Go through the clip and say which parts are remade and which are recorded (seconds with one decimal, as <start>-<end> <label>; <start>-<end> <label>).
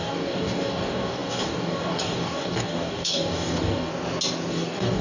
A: 0.0-3.9 remade; 3.9-4.5 recorded; 4.5-5.0 remade